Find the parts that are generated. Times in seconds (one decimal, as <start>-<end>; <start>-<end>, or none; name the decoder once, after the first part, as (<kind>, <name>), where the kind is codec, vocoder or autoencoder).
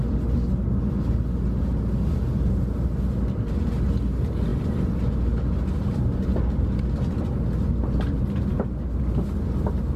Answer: none